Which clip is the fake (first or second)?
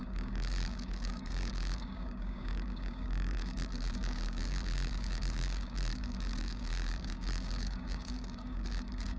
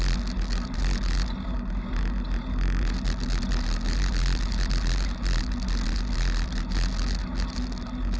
first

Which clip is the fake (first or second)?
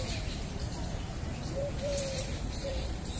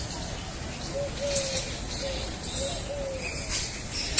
first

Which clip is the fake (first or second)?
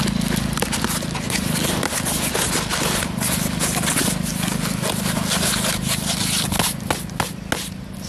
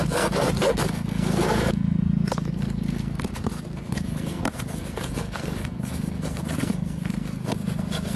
second